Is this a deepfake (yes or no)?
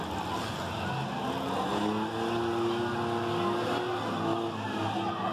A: no